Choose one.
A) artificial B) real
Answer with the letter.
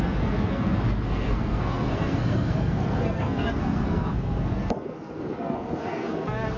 A